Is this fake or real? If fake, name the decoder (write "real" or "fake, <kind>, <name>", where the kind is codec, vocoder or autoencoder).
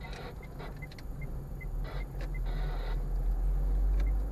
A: real